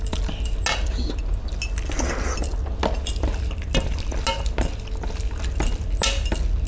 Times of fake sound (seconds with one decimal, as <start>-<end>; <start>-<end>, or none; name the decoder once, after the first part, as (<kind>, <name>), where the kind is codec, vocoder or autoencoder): none